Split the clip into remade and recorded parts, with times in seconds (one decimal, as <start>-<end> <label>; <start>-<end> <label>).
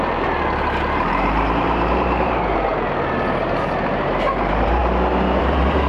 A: 0.0-2.7 remade; 2.7-3.4 recorded; 3.4-4.8 remade; 4.8-5.4 recorded; 5.4-5.9 remade